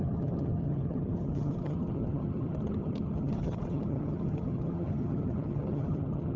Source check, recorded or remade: remade